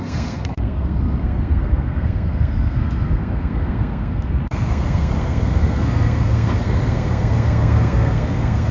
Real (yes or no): no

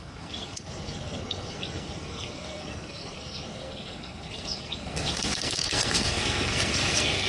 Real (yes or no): no